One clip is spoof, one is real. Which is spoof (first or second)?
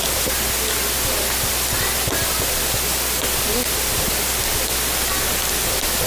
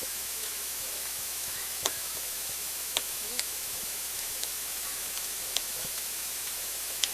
second